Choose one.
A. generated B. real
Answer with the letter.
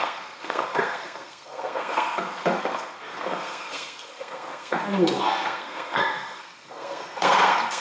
A